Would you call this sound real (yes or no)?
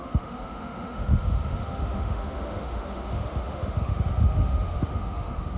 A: no